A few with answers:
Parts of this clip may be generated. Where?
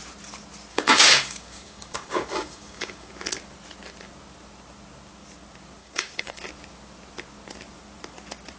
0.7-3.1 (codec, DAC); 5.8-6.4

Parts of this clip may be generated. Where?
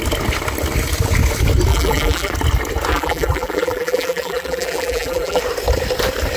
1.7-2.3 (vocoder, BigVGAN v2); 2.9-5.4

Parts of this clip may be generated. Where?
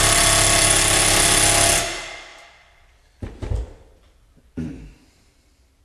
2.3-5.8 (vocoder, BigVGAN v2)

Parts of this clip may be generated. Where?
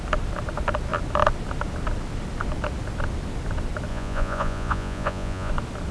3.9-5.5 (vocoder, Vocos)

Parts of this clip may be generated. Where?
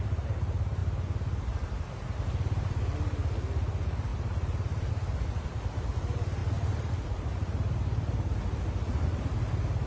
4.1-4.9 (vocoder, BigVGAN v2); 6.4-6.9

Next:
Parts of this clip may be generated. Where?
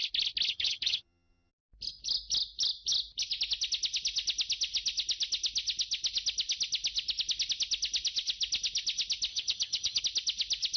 0.5-1.5 (vocoder, HiFi-GAN); 9.3-10.0